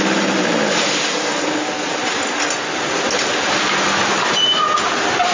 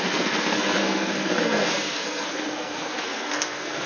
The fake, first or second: second